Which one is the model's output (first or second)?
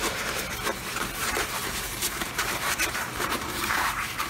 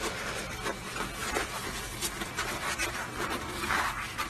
first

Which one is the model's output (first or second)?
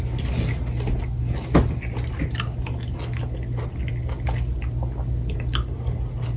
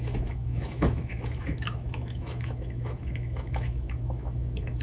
second